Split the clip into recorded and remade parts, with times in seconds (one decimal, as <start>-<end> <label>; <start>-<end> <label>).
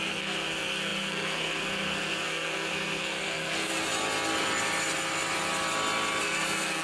0.0-3.7 remade; 3.7-6.2 recorded; 6.2-6.8 remade